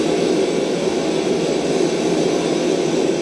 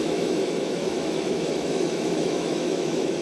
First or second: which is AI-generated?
second